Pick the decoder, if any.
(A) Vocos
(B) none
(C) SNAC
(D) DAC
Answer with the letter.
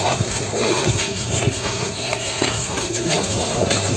C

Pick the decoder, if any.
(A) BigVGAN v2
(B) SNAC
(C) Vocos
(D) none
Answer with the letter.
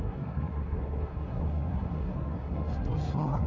B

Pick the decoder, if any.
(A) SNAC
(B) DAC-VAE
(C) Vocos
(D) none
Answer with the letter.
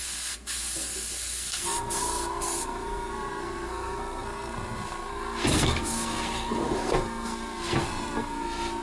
A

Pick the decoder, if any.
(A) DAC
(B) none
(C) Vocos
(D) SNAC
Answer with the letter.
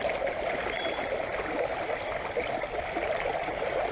B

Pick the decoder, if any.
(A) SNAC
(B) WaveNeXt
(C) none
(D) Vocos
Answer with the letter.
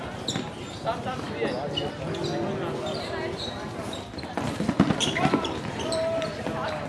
C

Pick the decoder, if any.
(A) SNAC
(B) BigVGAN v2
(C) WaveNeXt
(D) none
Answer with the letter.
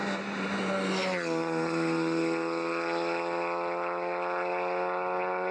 D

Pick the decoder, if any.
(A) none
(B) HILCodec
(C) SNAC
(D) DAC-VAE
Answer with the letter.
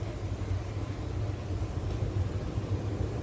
A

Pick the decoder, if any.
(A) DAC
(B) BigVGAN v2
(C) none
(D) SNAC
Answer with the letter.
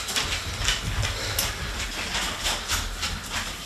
C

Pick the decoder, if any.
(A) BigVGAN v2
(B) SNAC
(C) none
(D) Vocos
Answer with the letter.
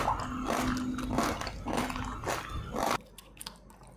C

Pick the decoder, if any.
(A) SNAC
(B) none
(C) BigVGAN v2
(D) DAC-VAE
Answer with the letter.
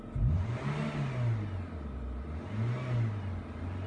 B